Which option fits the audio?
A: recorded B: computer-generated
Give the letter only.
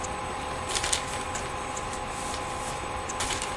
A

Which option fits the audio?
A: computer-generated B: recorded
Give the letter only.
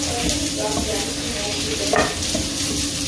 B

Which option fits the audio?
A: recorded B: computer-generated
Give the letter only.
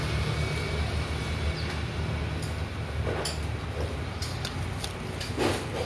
A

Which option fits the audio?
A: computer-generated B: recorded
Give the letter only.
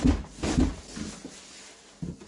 B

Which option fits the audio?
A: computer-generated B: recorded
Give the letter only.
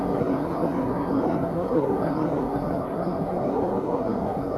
A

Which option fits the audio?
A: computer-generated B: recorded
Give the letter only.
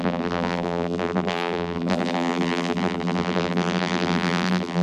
A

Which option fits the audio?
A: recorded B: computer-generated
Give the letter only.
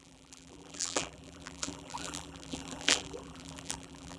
B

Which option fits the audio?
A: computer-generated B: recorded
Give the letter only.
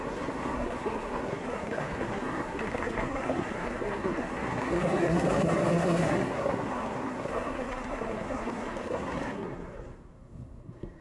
A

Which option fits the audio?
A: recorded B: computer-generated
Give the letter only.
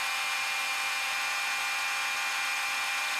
A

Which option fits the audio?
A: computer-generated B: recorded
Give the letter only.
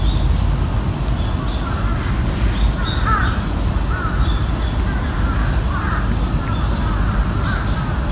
B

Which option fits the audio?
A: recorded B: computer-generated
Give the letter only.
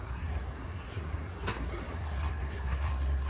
B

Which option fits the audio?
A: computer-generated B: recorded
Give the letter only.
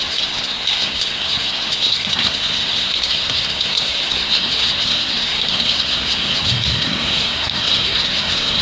A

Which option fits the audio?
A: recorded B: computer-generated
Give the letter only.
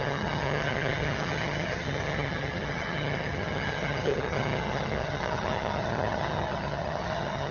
B